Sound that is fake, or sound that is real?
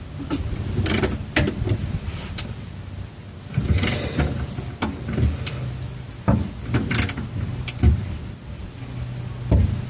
real